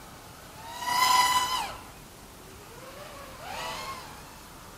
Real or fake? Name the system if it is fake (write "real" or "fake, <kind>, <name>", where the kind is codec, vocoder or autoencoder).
real